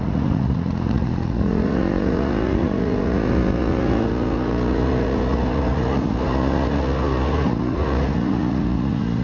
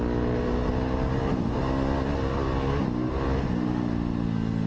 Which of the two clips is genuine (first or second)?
second